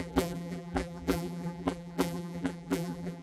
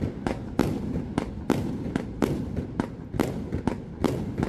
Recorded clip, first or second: second